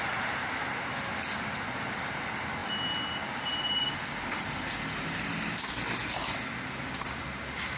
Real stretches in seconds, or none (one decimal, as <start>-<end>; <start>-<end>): 0.0-7.8